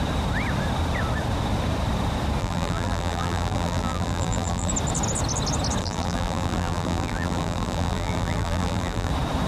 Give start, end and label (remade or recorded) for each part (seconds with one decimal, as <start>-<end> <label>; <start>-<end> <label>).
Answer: 0.0-2.4 recorded; 2.4-4.7 remade; 4.7-5.8 recorded; 5.8-9.1 remade; 9.1-9.5 recorded